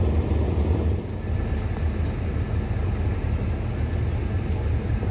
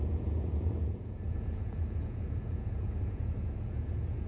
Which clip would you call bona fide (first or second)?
first